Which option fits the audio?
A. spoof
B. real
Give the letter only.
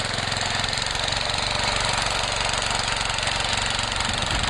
B